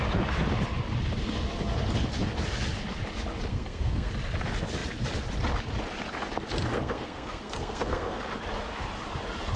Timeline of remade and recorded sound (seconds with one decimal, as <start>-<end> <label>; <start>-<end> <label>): 0.0-3.5 recorded; 3.5-4.1 remade; 4.1-6.7 recorded; 6.7-8.2 remade; 8.2-9.6 recorded